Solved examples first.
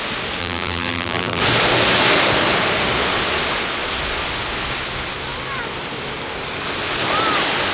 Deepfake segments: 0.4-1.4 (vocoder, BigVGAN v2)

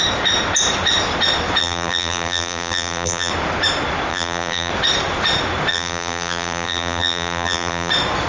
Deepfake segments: 1.6-3.3 (vocoder, BigVGAN v2); 4.1-4.7; 5.7-7.9

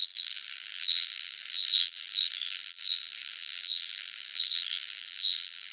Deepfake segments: 0.0-5.7 (vocoder, BigVGAN v2)

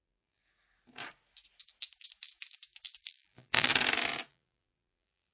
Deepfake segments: 0.0-0.4 (vocoder, BigVGAN v2); 3.0-3.7; 4.3-5.3

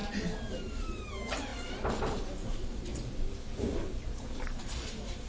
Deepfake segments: 0.5-1.5 (vocoder, BigVGAN v2); 2.1-2.9; 4.6-5.3